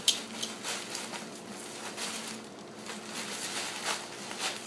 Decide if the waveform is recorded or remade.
recorded